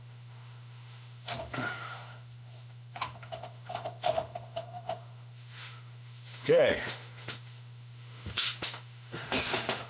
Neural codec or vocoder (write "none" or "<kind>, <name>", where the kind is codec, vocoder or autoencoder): autoencoder, DAC-VAE